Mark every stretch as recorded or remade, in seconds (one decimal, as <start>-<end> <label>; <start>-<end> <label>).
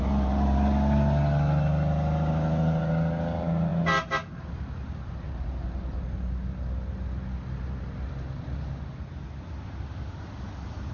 0.0-10.9 recorded